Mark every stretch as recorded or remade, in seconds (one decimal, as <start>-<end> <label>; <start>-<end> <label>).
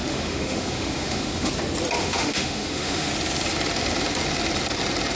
0.0-1.5 remade; 1.5-2.0 recorded; 2.0-3.1 remade; 3.1-5.2 recorded